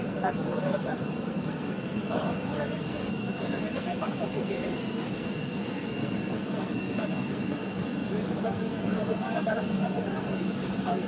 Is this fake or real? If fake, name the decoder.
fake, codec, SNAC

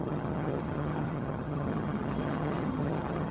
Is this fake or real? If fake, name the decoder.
fake, vocoder, HiFi-GAN